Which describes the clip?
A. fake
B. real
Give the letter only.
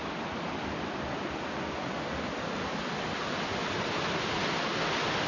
B